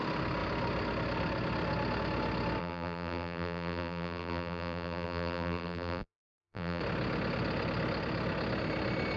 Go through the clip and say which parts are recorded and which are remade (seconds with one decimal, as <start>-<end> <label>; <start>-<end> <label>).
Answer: 0.0-2.6 recorded; 2.6-6.8 remade; 6.8-9.2 recorded